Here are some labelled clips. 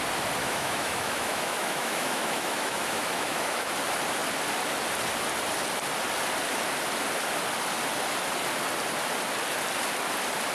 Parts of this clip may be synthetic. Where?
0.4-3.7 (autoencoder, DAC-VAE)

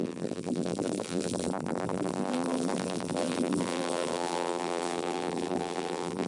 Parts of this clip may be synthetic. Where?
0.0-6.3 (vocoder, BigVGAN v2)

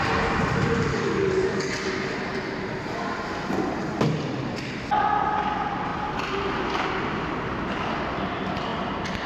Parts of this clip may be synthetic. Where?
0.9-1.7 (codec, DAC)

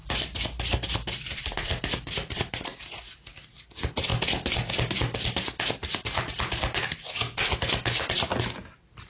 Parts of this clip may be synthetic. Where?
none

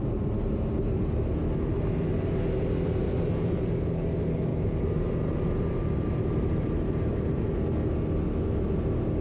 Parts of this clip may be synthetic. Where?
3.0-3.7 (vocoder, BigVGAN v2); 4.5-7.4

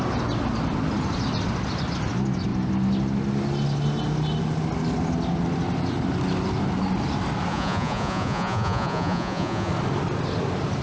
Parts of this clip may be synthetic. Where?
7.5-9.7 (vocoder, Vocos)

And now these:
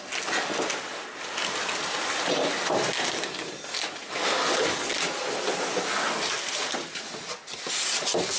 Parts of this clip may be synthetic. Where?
1.4-2.8 (vocoder, BigVGAN v2)